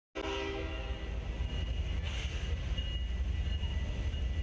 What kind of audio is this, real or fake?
real